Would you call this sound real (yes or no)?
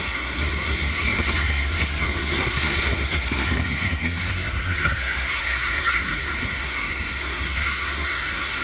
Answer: no